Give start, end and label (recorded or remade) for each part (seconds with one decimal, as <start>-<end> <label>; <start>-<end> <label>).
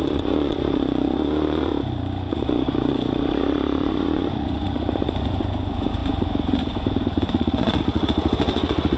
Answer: 0.0-1.7 remade; 1.7-2.3 recorded; 2.3-9.0 remade